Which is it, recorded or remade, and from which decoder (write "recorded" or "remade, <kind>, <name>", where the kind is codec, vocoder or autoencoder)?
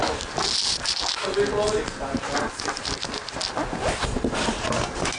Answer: recorded